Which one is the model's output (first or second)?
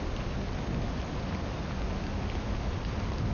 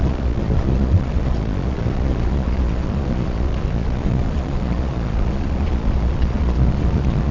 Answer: second